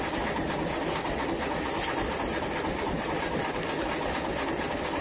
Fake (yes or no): no